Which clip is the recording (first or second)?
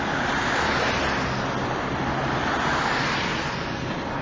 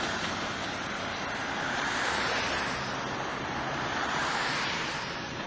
first